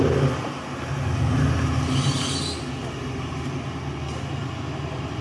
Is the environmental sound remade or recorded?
recorded